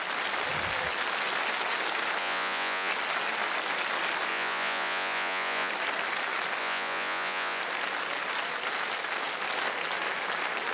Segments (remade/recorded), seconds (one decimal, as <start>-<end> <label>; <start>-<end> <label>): 0.0-2.2 recorded; 2.2-2.9 remade; 2.9-4.3 recorded; 4.3-5.7 remade; 5.7-6.6 recorded; 6.6-7.6 remade; 7.6-10.7 recorded